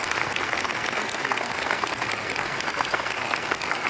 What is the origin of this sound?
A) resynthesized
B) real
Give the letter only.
A